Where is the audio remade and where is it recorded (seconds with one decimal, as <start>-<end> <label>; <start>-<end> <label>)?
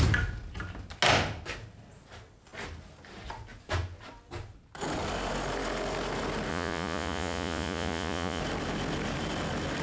0.0-6.5 recorded; 6.5-8.4 remade; 8.4-9.8 recorded